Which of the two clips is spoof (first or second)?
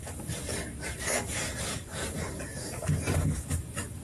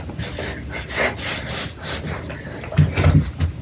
first